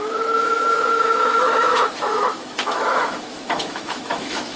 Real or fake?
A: fake